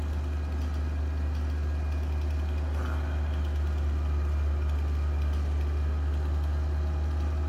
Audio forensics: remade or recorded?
recorded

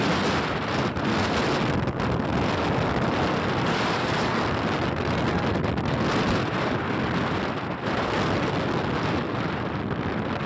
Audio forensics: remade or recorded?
recorded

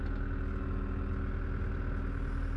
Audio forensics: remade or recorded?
recorded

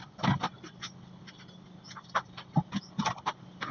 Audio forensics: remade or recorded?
recorded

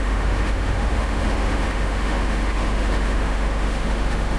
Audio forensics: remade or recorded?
remade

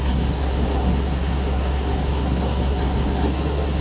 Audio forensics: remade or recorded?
remade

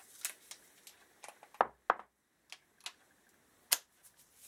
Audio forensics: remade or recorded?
recorded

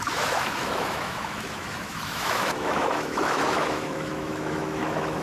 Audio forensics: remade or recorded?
remade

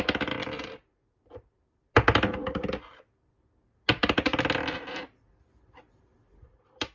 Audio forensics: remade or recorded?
recorded